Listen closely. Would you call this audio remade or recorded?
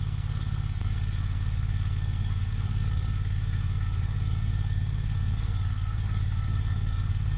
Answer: remade